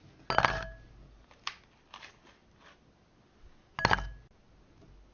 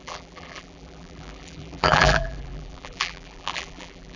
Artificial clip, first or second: second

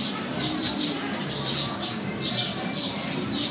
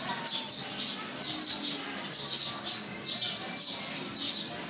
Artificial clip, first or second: first